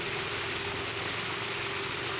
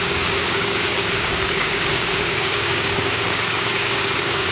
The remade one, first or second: second